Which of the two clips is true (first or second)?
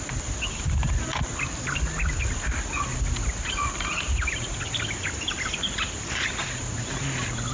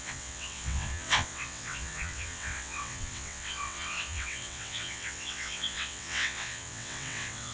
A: first